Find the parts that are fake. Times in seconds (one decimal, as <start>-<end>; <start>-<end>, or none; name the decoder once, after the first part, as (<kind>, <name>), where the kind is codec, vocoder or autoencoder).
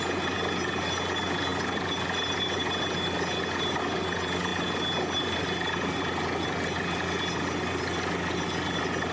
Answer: none